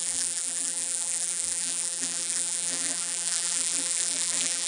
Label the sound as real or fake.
fake